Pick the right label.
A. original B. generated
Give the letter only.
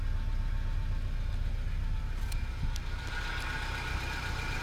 A